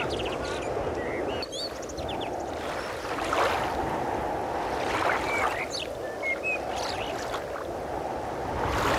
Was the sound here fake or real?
real